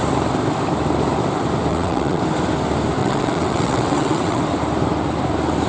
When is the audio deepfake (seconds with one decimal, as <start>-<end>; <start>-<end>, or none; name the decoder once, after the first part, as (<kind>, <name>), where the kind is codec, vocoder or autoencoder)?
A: 1.7-2.2 (vocoder, WaveNeXt); 3.0-4.4